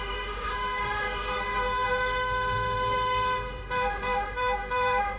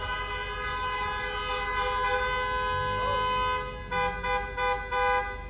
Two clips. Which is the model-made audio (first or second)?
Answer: first